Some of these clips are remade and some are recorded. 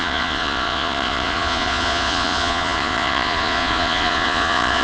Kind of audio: remade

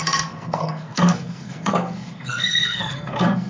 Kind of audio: remade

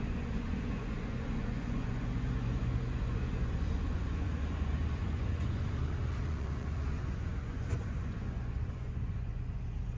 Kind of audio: remade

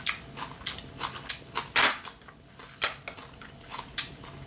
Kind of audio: recorded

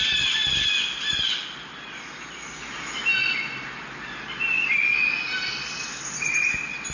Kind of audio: recorded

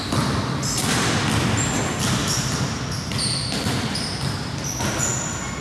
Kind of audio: recorded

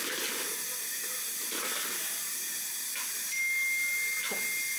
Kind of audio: recorded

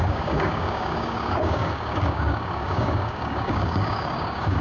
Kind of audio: remade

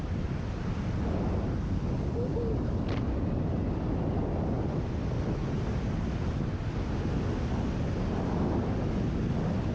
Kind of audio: recorded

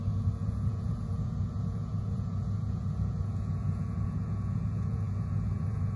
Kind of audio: remade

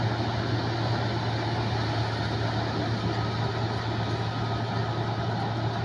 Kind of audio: recorded